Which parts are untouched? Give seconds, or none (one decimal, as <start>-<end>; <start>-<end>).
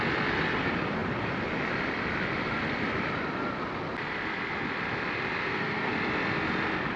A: 0.0-5.4; 5.9-7.0